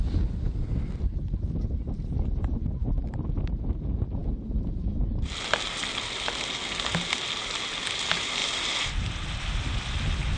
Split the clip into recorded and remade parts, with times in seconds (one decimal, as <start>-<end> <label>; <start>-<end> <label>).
0.0-10.4 recorded